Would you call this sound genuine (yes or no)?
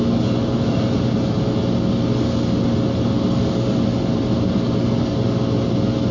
yes